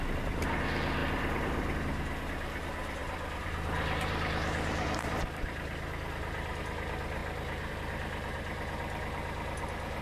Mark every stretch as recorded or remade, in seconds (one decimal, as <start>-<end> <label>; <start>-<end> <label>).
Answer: 0.0-1.0 recorded; 1.0-1.8 remade; 1.8-3.0 recorded; 3.0-6.6 remade; 6.6-10.0 recorded